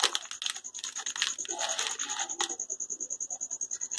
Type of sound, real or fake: real